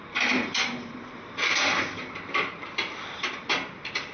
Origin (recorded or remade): remade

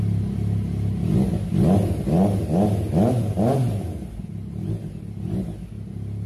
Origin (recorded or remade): recorded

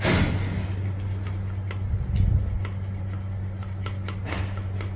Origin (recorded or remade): recorded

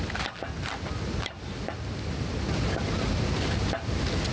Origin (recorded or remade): recorded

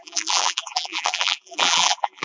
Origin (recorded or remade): remade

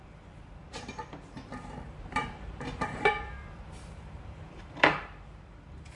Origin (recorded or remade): remade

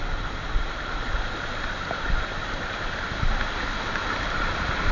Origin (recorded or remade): recorded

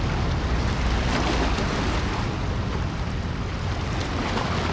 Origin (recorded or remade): recorded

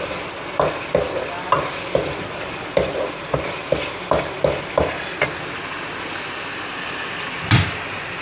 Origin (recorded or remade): recorded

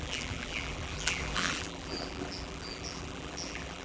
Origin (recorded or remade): remade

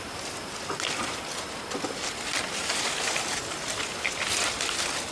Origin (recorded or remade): recorded